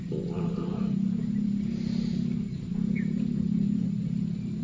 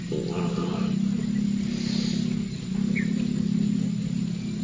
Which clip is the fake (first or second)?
first